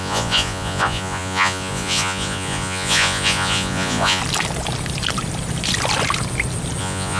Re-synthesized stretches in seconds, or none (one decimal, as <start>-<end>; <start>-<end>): 0.0-4.2; 6.8-7.2

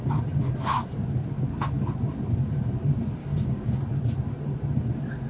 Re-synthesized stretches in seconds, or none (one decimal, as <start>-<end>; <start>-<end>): 3.2-3.8

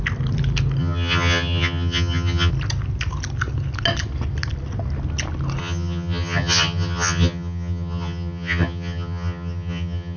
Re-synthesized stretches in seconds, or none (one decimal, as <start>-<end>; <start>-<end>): 0.8-2.5; 5.6-10.2